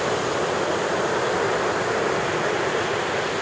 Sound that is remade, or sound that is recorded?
recorded